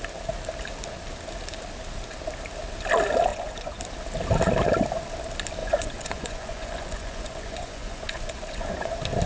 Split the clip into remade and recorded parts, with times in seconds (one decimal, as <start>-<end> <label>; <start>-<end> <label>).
0.0-3.3 recorded; 3.3-3.8 remade; 3.8-5.6 recorded; 5.6-8.9 remade; 8.9-9.3 recorded